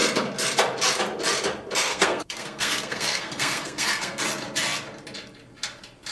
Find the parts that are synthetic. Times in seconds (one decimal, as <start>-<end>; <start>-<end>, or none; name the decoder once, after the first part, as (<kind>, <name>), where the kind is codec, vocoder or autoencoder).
1.9-4.2 (codec, SNAC)